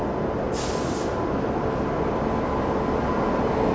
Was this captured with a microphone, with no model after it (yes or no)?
yes